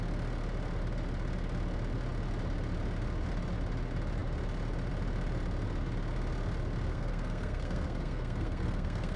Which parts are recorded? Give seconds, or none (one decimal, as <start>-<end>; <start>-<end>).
0.0-6.9